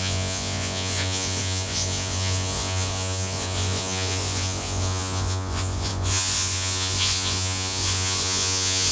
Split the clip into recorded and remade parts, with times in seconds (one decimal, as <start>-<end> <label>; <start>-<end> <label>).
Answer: 0.0-8.9 remade